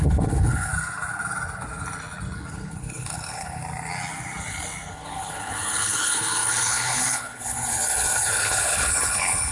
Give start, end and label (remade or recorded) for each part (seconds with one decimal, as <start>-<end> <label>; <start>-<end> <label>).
0.0-0.7 remade; 0.7-2.5 recorded; 2.5-3.6 remade; 3.6-4.9 recorded; 4.9-9.5 remade